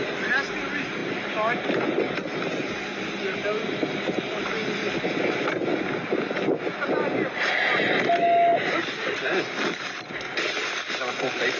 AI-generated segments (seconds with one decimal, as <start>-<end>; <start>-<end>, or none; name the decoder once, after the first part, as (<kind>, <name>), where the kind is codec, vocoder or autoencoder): 1.0-2.4 (vocoder, BigVGAN v2); 8.5-10.1